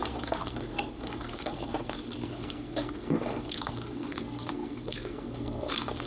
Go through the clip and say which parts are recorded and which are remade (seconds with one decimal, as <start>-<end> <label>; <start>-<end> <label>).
0.0-6.1 remade